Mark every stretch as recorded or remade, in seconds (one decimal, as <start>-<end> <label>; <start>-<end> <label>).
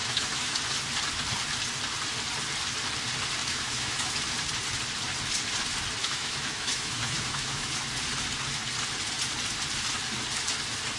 0.0-0.6 remade; 0.6-3.4 recorded; 3.4-4.2 remade; 4.2-6.0 recorded; 6.0-7.7 remade; 7.7-11.0 recorded